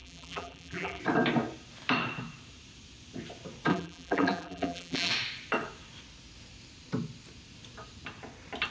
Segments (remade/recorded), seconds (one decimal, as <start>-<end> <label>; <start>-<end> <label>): 0.0-1.0 remade; 1.0-3.7 recorded; 3.7-5.1 remade; 5.1-8.7 recorded